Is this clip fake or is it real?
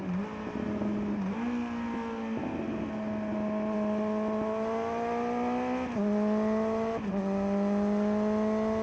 real